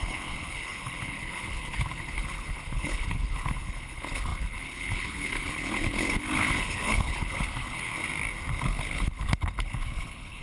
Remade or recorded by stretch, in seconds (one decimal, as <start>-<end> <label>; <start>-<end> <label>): 0.0-7.9 remade; 7.9-8.5 recorded; 8.5-10.4 remade